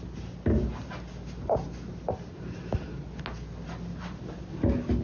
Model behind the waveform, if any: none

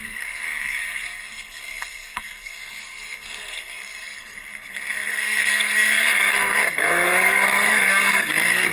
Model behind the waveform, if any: codec, SNAC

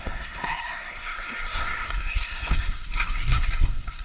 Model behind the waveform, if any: codec, SNAC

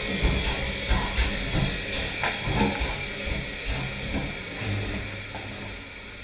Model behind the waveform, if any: none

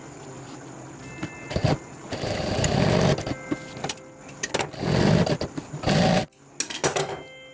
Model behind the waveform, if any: none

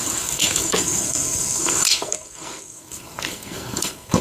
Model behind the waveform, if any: codec, SNAC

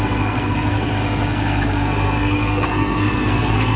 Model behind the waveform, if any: codec, SNAC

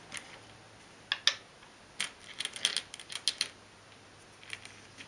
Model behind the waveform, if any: none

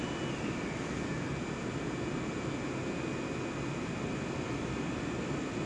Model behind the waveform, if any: none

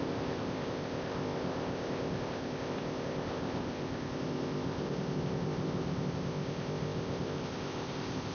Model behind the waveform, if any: codec, ZipCodec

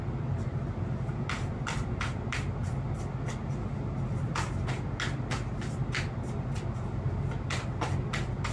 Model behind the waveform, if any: none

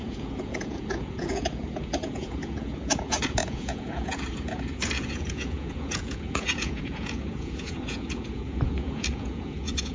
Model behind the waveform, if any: vocoder, Vocos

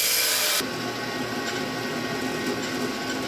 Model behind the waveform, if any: none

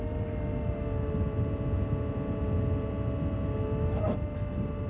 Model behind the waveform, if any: none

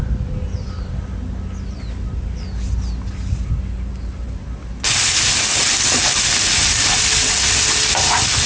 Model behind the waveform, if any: none